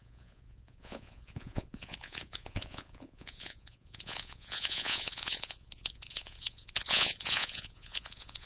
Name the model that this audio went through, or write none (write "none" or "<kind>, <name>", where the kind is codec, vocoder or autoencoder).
vocoder, Vocos